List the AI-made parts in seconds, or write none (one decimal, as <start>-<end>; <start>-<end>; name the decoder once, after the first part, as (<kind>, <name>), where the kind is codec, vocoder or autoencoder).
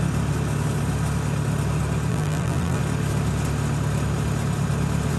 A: 2.1-2.8 (vocoder, BigVGAN v2)